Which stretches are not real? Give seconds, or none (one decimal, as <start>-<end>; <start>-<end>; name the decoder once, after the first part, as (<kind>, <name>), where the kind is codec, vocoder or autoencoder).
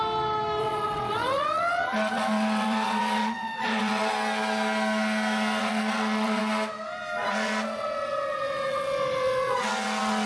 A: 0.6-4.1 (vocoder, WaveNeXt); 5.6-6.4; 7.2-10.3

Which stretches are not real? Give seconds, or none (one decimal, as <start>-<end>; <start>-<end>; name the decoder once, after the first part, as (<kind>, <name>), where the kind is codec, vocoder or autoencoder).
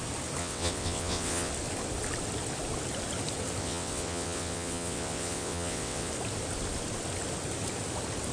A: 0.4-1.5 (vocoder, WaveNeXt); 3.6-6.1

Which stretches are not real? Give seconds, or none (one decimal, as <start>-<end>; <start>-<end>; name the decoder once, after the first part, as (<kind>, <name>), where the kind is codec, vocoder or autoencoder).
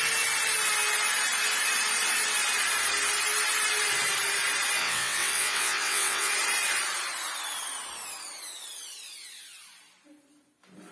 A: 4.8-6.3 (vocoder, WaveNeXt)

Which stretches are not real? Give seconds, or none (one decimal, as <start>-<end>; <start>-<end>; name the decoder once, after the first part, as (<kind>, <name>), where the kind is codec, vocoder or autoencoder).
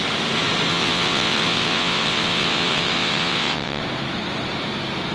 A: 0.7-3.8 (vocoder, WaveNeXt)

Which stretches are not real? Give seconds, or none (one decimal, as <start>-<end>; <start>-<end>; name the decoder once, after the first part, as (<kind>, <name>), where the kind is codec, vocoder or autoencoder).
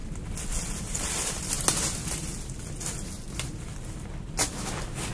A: none